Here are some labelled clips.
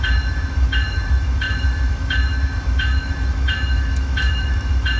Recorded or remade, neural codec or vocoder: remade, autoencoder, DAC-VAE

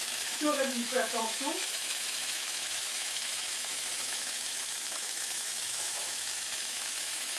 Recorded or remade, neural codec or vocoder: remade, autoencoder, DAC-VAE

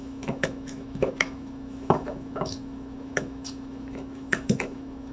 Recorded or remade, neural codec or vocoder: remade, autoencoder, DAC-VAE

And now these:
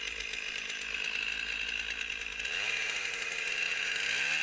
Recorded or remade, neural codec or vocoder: recorded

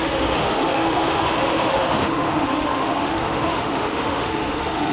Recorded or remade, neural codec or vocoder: remade, autoencoder, DAC-VAE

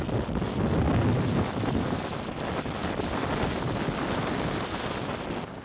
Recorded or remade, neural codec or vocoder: recorded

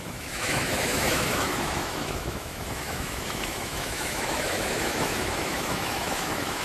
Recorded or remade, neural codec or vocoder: remade, autoencoder, DAC-VAE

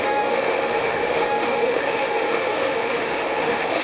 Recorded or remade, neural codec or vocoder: remade, autoencoder, DAC-VAE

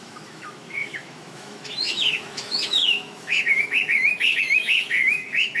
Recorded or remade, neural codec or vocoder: remade, autoencoder, DAC-VAE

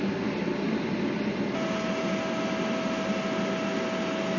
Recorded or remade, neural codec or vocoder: recorded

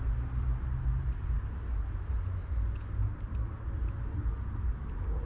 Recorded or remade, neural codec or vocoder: recorded